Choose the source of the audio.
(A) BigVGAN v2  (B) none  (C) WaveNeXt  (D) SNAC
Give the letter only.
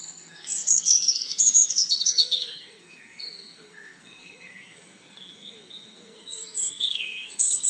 D